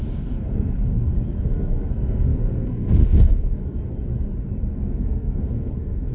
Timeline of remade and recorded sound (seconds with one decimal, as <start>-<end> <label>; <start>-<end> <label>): 0.0-3.6 remade; 3.6-4.7 recorded; 4.7-6.1 remade